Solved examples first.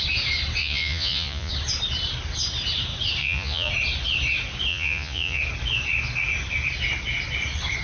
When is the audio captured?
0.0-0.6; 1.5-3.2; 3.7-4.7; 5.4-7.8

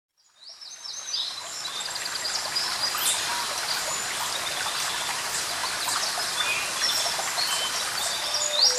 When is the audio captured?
0.0-8.8

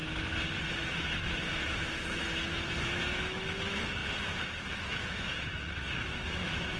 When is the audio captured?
0.0-0.5

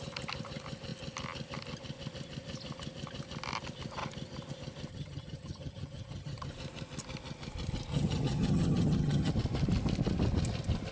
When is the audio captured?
0.0-4.9; 6.5-7.9; 9.3-10.9

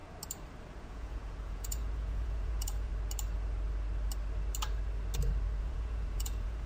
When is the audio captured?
0.0-0.8; 2.9-5.6

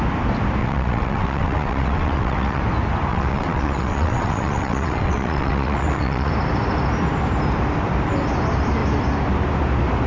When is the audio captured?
0.0-0.6; 2.6-3.1; 6.3-10.1